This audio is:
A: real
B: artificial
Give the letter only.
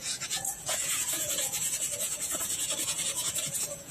B